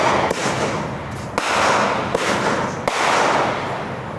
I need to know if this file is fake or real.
real